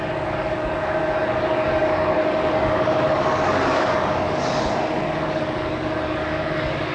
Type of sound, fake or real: fake